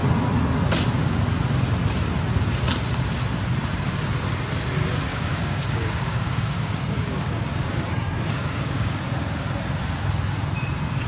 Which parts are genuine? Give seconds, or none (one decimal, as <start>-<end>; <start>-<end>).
0.0-5.1; 9.0-11.1

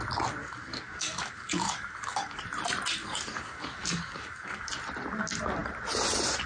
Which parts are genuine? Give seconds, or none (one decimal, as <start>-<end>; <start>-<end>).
0.0-0.4; 2.4-3.0; 4.7-6.5

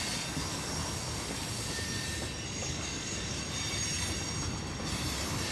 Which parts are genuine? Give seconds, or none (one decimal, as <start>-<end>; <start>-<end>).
0.0-0.5; 1.7-2.6; 3.4-5.5

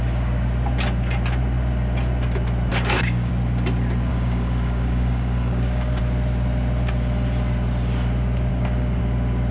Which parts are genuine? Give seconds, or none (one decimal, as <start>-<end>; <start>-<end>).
0.0-2.7; 3.3-4.1; 6.0-8.5; 9.0-9.5